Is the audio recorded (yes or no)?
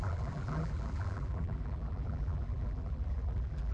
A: no